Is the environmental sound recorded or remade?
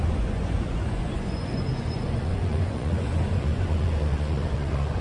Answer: remade